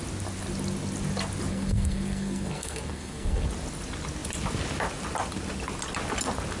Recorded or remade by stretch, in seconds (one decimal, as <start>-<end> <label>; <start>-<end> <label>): 0.0-1.5 recorded; 1.5-3.5 remade; 3.5-6.6 recorded